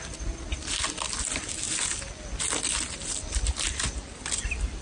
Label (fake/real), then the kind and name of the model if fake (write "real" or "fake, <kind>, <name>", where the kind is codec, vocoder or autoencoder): real